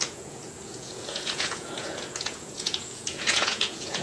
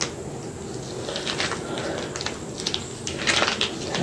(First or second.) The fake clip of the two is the first